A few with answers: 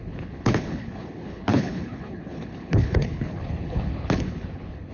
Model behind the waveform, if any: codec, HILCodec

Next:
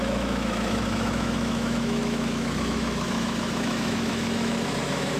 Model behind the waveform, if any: autoencoder, DAC-VAE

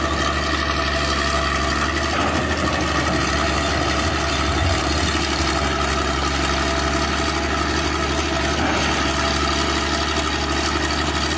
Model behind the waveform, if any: none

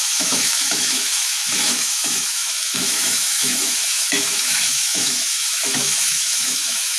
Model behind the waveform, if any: autoencoder, DAC-VAE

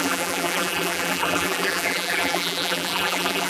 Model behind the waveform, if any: vocoder, BigVGAN v2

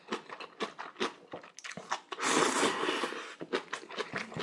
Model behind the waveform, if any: none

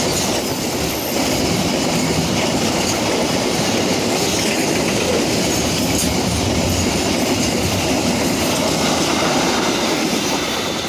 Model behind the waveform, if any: none